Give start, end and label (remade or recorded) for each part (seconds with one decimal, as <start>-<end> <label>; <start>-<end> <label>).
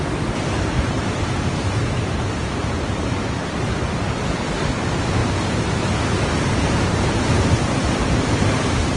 0.0-3.4 remade; 3.4-4.7 recorded; 4.7-5.2 remade; 5.2-6.5 recorded; 6.5-9.0 remade